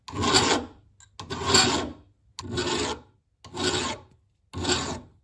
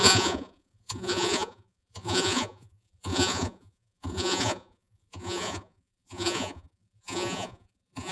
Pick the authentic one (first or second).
first